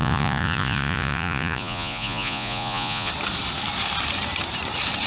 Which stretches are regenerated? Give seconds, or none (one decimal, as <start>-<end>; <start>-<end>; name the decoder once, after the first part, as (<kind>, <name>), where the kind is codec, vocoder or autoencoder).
0.0-3.1 (vocoder, Vocos)